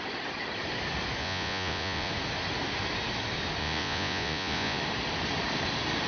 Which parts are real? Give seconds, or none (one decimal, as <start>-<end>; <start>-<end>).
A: 0.0-1.2; 2.1-3.6; 4.8-6.1